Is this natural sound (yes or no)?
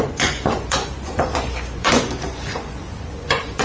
no